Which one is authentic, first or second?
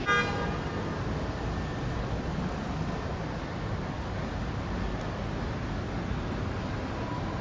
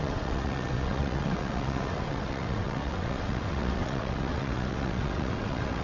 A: first